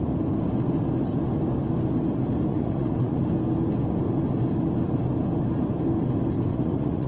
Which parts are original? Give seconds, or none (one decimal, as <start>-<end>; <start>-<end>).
0.0-2.5; 3.3-6.5